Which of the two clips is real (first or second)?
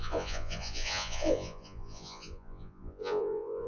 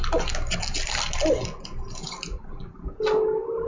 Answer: second